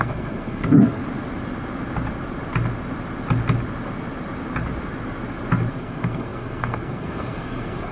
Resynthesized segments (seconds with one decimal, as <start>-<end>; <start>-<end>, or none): 0.0-1.0; 5.7-7.9